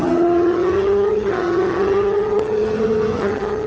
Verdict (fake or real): fake